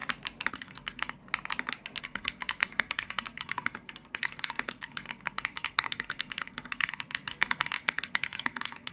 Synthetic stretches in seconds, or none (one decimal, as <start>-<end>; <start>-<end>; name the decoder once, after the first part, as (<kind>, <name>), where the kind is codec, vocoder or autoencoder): 0.5-1.2 (codec, SNAC); 2.0-8.9